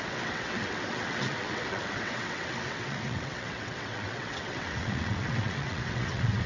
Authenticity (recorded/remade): remade